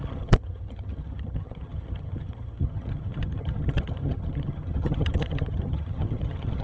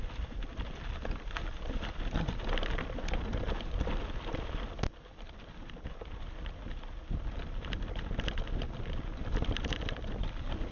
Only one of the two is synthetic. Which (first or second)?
first